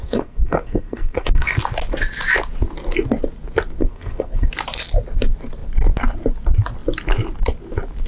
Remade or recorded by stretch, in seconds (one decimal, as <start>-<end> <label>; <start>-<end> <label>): 0.0-1.6 remade; 1.6-3.8 recorded; 3.8-4.5 remade; 4.5-8.1 recorded